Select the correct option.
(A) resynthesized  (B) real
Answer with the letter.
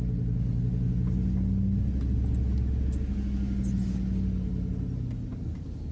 B